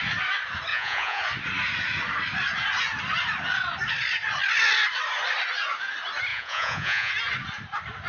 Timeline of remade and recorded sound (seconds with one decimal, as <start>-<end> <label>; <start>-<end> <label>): 0.0-0.7 recorded; 0.7-1.2 remade; 1.2-6.3 recorded; 6.3-7.1 remade; 7.1-8.1 recorded